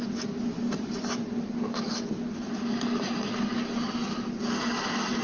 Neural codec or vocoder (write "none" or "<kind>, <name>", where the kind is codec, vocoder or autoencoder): none